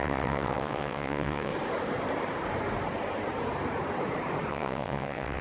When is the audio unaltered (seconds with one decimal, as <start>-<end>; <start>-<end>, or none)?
1.5-4.5